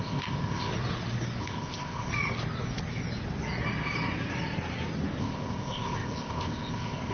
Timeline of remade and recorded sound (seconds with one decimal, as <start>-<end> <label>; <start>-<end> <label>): 0.0-0.7 remade; 0.7-1.4 recorded; 1.4-2.1 remade; 2.1-5.2 recorded; 5.2-7.1 remade